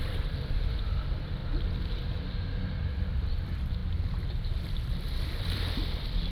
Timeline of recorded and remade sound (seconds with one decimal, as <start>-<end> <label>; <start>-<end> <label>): 0.0-1.4 remade; 1.4-3.3 recorded; 3.3-3.8 remade; 3.8-4.6 recorded; 4.6-6.3 remade